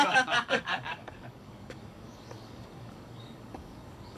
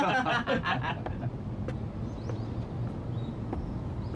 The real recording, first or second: second